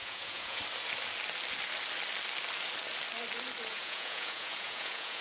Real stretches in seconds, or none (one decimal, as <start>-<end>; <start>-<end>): 0.6-3.7